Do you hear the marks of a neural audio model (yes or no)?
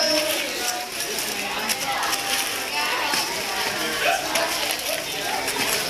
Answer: no